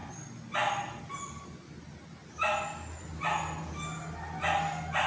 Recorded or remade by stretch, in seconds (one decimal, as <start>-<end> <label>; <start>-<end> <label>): 0.0-5.1 recorded